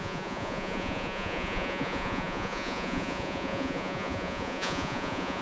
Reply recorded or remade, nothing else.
remade